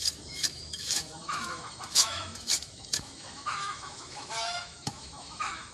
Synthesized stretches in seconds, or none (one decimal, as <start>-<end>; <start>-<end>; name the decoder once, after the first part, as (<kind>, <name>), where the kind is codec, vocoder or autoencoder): 0.0-5.7 (autoencoder, DAC-VAE)